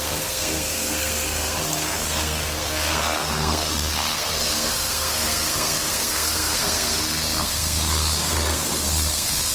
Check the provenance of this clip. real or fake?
fake